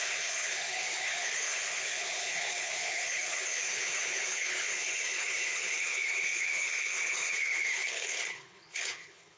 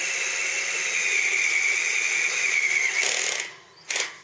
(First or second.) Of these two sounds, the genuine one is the second